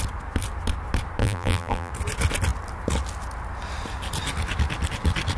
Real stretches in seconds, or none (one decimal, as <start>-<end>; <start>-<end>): 0.0-1.2; 1.9-5.4